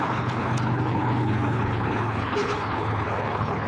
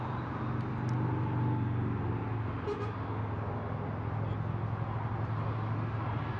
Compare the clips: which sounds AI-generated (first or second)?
first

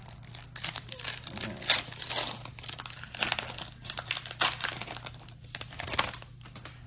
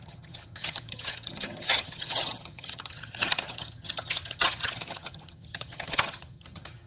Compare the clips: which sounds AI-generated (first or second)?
second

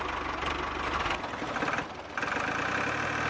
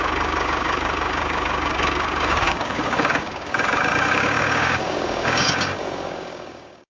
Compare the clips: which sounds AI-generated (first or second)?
second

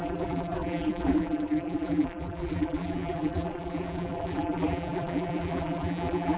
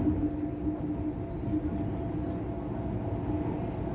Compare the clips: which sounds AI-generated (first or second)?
first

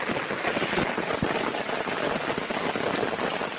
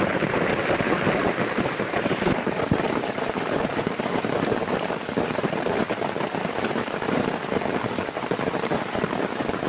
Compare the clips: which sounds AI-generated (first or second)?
second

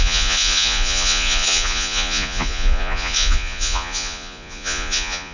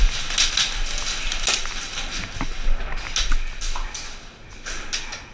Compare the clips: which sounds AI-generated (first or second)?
first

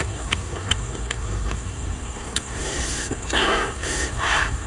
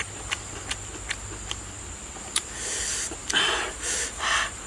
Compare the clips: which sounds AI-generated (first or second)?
first